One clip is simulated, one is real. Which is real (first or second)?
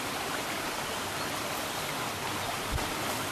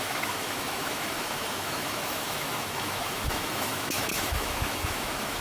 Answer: first